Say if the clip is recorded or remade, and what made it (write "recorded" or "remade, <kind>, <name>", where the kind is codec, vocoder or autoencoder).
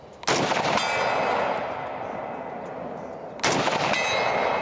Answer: recorded